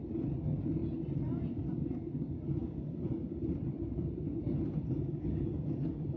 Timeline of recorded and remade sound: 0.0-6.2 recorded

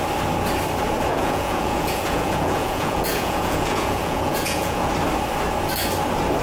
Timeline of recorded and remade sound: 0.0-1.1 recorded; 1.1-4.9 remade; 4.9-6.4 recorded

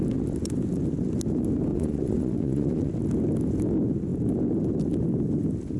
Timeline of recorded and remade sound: 0.0-1.7 recorded; 1.7-2.9 remade; 2.9-5.8 recorded